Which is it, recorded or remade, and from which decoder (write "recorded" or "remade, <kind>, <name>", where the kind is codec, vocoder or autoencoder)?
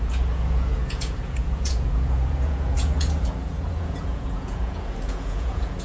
remade, vocoder, Vocos